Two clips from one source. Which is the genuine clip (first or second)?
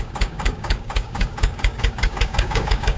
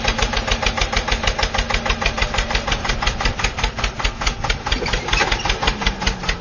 second